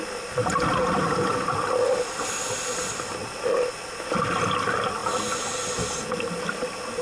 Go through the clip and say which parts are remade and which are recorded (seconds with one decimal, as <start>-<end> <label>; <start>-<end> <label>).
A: 0.0-7.0 recorded